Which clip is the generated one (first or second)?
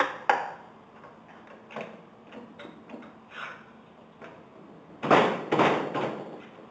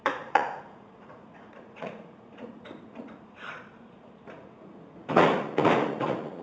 second